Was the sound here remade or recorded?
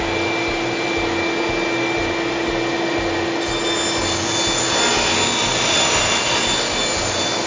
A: recorded